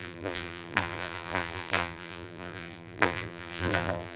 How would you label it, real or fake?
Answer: fake